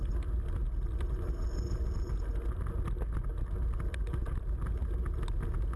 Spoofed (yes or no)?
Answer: no